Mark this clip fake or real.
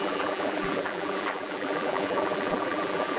fake